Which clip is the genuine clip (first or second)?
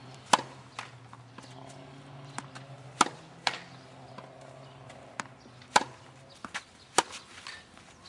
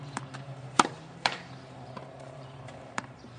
first